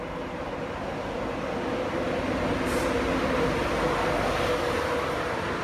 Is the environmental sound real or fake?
real